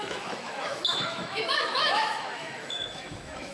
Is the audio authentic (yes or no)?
no